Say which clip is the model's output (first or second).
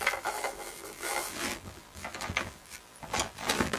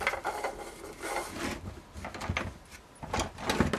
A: first